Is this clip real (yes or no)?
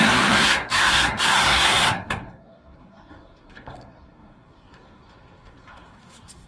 no